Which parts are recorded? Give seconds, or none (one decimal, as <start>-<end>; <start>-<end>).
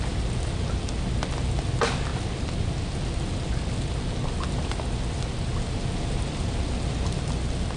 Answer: 0.0-7.8